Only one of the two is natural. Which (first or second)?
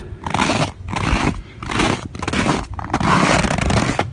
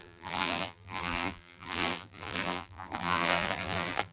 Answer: first